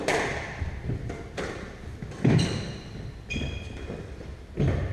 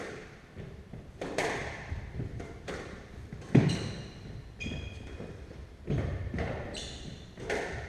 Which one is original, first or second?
first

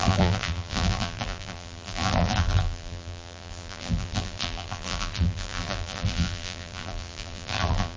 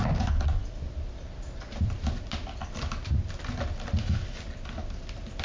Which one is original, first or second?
second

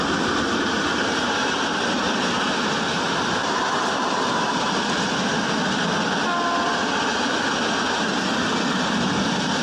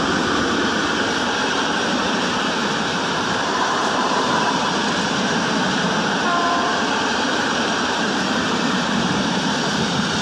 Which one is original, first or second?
first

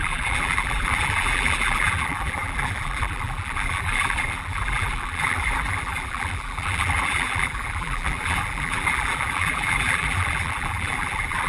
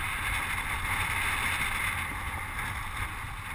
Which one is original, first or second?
second